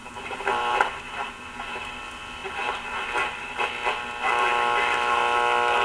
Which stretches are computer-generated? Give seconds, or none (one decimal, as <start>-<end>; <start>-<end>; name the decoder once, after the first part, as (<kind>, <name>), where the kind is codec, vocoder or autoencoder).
0.0-2.0 (vocoder, BigVGAN v2); 2.4-3.7

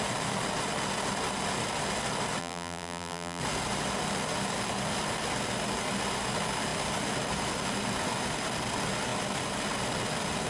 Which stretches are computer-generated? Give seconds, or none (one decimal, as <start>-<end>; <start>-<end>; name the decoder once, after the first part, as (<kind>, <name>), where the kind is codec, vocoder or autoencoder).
2.4-3.4 (vocoder, BigVGAN v2)

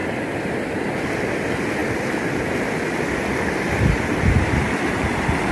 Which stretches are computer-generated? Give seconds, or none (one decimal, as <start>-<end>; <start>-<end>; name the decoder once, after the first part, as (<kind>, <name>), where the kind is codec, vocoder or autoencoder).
none

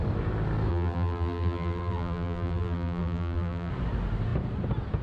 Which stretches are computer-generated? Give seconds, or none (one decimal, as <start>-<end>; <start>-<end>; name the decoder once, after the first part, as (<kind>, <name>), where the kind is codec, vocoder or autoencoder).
0.7-3.7 (vocoder, BigVGAN v2)

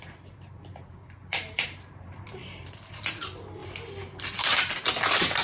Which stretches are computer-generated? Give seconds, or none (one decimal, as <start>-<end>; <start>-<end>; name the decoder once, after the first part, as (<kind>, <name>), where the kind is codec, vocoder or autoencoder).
0.0-3.6 (vocoder, BigVGAN v2); 4.4-5.4